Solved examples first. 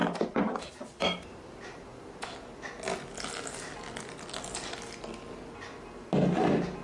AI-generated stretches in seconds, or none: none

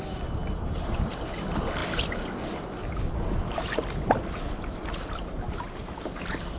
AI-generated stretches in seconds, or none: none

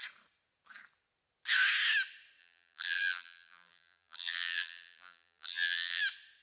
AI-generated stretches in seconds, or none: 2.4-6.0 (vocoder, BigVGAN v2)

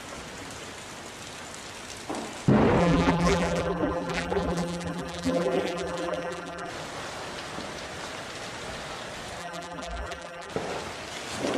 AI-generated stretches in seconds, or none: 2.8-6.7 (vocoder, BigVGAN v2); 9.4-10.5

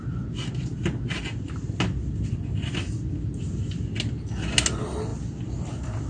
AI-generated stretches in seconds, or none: none

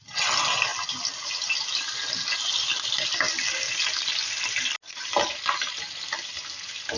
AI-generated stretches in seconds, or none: none

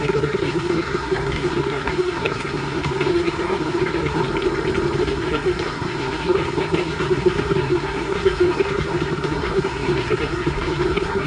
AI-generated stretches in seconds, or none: 0.0-4.2 (codec, SNAC); 5.0-11.3

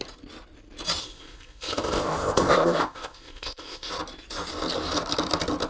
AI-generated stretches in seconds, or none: 1.0-3.9 (codec, ZipCodec)